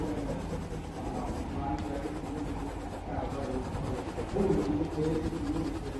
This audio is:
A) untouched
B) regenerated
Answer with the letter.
A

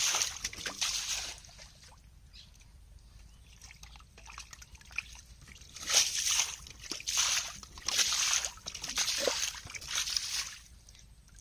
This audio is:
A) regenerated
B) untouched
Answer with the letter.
B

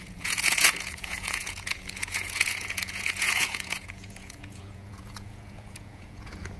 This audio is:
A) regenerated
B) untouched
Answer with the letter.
A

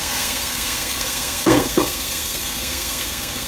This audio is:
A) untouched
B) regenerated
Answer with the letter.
B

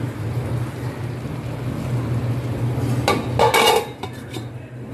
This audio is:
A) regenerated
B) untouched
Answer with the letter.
B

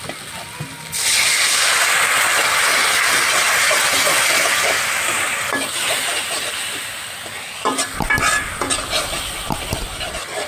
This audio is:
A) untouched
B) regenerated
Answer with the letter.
A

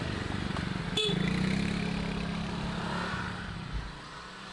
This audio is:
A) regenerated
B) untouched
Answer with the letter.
B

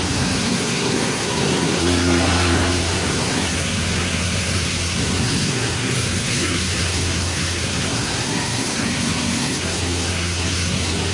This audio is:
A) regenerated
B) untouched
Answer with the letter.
A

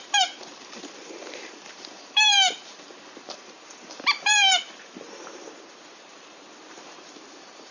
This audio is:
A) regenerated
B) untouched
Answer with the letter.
A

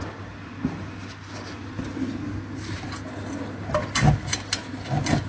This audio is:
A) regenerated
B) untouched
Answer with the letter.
B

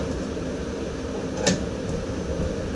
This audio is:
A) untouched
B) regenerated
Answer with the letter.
A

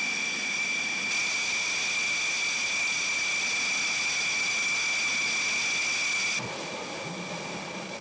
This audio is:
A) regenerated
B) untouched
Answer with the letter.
B